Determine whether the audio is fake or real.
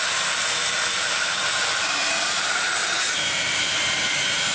fake